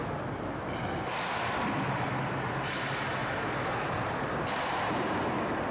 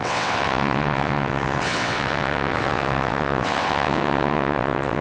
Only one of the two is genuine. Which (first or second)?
first